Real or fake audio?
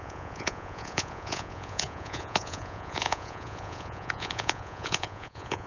fake